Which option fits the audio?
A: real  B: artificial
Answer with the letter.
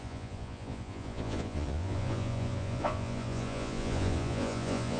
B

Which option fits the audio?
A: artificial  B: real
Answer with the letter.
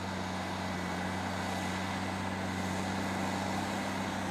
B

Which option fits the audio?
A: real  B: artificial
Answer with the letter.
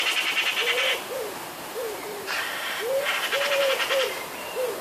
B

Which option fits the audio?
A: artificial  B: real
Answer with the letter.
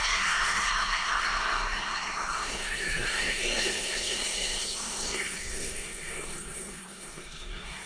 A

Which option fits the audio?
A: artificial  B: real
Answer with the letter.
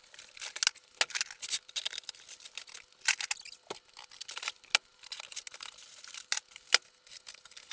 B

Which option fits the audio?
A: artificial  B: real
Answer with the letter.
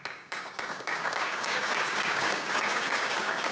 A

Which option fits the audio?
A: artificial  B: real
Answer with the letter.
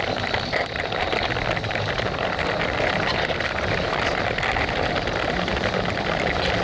B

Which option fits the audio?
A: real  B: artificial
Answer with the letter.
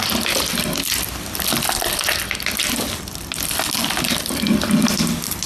A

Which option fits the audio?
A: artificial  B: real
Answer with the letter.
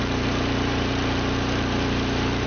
A